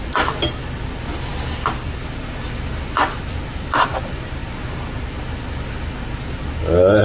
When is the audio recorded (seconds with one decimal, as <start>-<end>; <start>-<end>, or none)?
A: 0.0-7.0